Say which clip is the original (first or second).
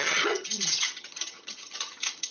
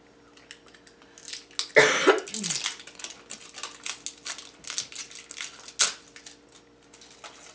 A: second